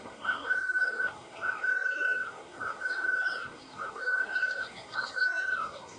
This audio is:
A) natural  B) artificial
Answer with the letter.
B